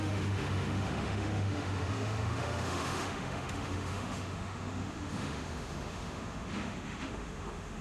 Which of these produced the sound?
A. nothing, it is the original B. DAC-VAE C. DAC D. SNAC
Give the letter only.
B